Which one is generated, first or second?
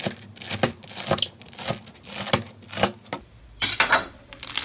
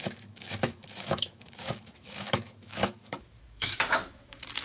second